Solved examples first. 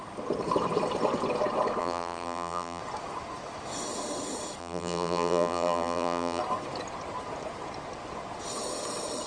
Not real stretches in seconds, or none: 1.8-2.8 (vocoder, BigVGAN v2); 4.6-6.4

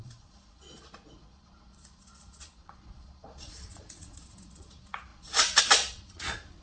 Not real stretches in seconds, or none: 0.0-6.6 (vocoder, Vocos)

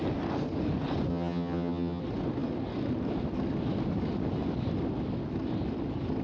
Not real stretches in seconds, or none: 1.1-2.0 (vocoder, HiFi-GAN)

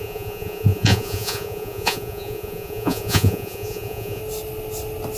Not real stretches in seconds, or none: 0.0-4.2 (vocoder, Vocos)